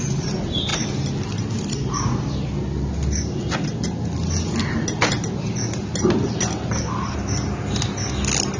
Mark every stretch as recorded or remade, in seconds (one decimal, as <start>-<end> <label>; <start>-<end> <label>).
0.0-8.6 recorded